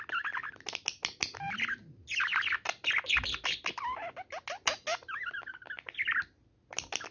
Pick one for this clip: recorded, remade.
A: recorded